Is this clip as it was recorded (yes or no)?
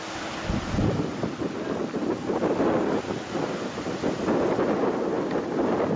yes